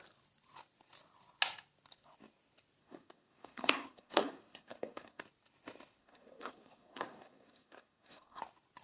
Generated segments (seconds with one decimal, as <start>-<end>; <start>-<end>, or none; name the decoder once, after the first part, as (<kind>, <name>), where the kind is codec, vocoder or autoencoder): 2.8-5.2 (codec, SNAC); 6.0-8.4